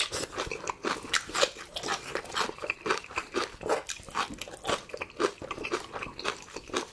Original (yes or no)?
yes